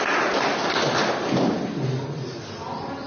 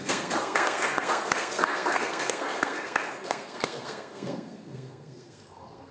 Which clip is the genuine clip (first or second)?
first